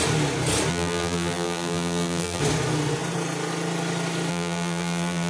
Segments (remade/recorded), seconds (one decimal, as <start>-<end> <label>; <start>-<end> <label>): 0.0-0.7 recorded; 0.7-2.4 remade; 2.4-4.3 recorded; 4.3-5.3 remade